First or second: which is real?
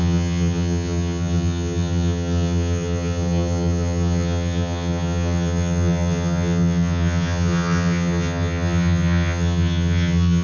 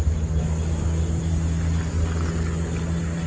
second